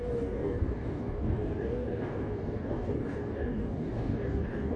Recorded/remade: remade